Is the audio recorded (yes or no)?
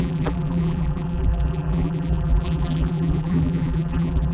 no